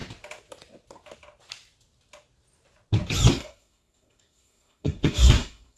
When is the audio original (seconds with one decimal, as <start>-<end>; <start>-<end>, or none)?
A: 0.0-3.3